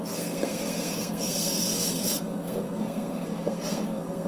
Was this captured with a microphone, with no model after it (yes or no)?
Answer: no